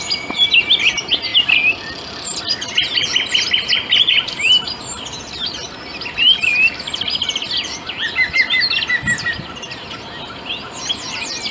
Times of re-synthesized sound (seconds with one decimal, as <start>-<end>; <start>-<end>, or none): none

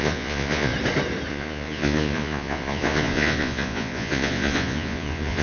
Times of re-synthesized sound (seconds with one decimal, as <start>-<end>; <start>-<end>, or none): 0.0-0.7; 1.3-5.4